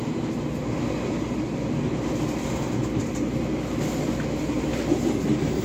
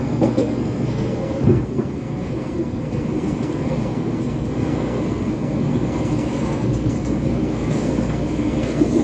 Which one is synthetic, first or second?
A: second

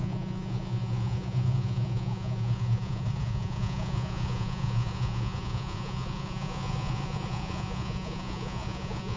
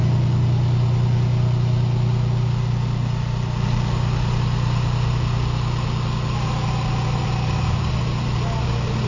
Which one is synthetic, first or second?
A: first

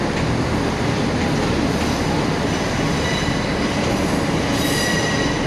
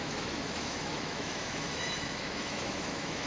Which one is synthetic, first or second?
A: second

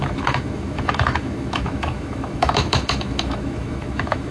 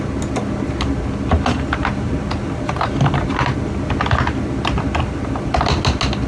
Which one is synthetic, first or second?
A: first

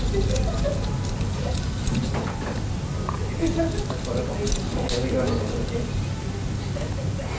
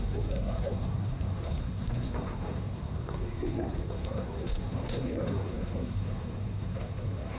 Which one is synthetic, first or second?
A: second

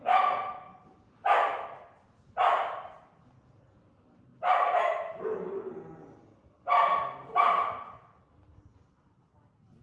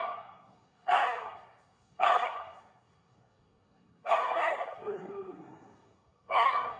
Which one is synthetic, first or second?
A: second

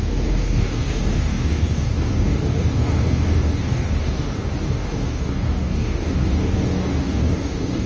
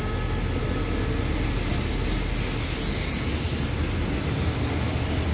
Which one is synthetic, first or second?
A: first